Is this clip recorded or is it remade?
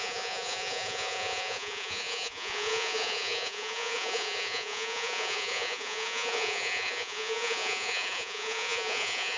remade